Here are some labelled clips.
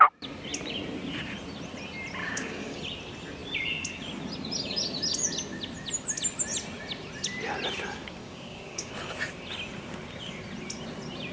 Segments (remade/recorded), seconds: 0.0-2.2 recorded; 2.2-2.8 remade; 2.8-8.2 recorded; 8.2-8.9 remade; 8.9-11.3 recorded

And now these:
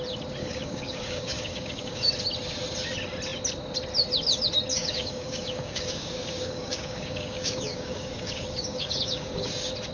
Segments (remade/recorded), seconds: 0.0-0.4 recorded; 0.4-2.1 remade; 2.1-4.7 recorded; 4.7-9.5 remade; 9.5-9.9 recorded

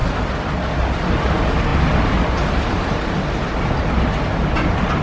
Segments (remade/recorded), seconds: 0.0-5.0 recorded

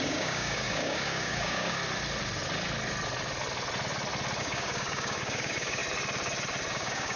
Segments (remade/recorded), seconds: 0.0-1.8 remade; 1.8-4.4 recorded; 4.4-5.8 remade; 5.8-6.7 recorded; 6.7-7.2 remade

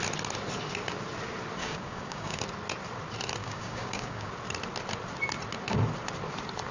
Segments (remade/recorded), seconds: 0.0-1.6 recorded; 1.6-2.4 remade; 2.4-3.4 recorded; 3.4-4.3 remade; 4.3-6.7 recorded

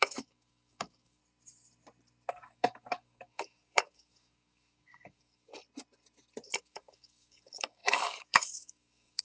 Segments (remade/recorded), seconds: 0.0-1.2 remade; 1.2-2.3 recorded; 2.3-5.5 remade; 5.5-6.6 recorded; 6.6-9.2 remade

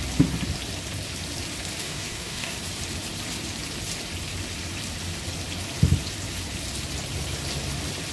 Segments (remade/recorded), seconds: 0.0-1.8 recorded; 1.8-2.6 remade; 2.6-8.1 recorded

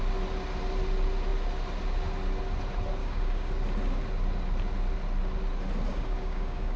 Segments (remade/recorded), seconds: 0.0-3.0 recorded; 3.0-3.5 remade; 3.5-5.9 recorded; 5.9-6.8 remade